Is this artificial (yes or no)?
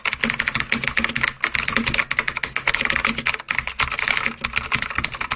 no